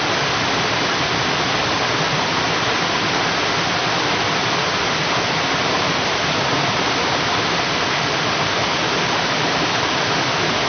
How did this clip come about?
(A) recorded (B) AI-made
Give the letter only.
A